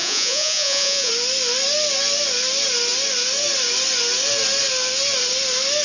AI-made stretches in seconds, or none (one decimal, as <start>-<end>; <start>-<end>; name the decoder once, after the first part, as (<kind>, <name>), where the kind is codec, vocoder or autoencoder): 0.0-1.1 (vocoder, Vocos)